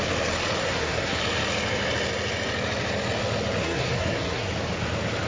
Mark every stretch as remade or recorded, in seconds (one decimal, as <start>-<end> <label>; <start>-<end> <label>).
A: 0.0-0.6 recorded; 0.6-1.2 remade; 1.2-3.6 recorded; 3.6-4.5 remade; 4.5-5.3 recorded

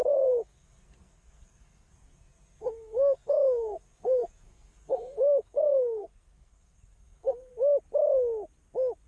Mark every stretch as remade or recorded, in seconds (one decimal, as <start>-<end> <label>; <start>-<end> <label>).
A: 0.0-7.5 remade; 7.5-9.1 recorded

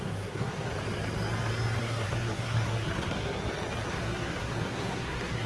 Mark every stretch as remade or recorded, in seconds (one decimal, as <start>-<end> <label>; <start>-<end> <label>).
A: 0.0-0.7 remade; 0.7-1.8 recorded; 1.8-3.4 remade; 3.4-3.9 recorded; 3.9-5.5 remade